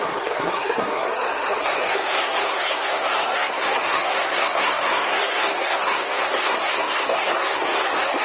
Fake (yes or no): yes